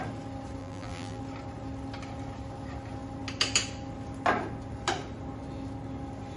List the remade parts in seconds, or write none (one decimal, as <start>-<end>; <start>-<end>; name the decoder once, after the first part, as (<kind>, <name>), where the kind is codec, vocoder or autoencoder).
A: 0.6-1.2 (vocoder, BigVGAN v2)

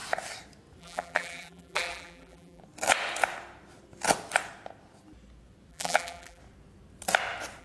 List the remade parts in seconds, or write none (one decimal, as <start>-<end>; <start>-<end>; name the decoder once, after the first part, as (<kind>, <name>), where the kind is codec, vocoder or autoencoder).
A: 0.8-2.6 (vocoder, BigVGAN v2); 5.7-6.4

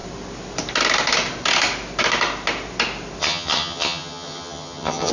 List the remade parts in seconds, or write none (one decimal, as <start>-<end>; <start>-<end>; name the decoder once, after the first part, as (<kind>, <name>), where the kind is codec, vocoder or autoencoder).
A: 3.2-5.1 (vocoder, HiFi-GAN)